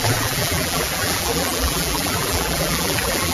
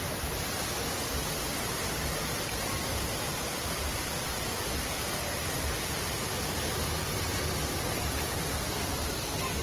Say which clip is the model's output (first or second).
first